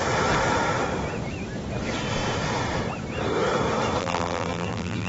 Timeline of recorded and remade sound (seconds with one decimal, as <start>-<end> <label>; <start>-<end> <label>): 0.0-4.0 recorded; 4.0-5.1 remade